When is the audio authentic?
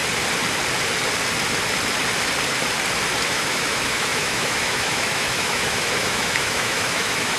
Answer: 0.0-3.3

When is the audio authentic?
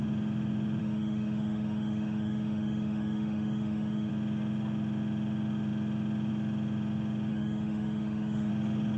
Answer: 0.0-0.8; 4.1-7.3; 8.5-9.0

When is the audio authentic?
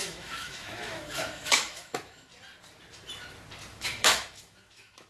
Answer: 2.3-3.7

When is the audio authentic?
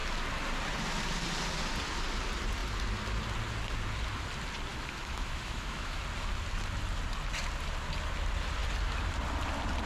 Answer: 0.0-4.7; 6.0-9.9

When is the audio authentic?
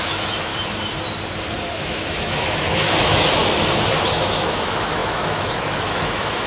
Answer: 0.5-1.8; 3.4-4.0